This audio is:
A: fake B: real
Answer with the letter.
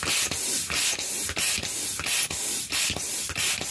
B